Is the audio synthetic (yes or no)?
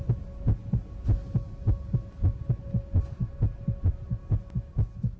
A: no